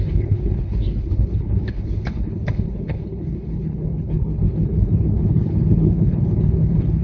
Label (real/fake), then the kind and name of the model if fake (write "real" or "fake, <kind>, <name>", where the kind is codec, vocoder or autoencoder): fake, codec, HILCodec